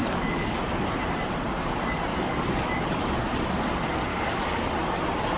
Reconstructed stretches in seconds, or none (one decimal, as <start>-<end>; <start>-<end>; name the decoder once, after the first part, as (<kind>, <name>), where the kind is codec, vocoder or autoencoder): 0.0-0.6 (codec, DAC); 2.1-3.0; 4.1-4.7